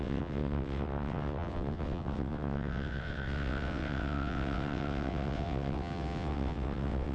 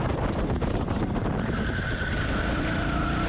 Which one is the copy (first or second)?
first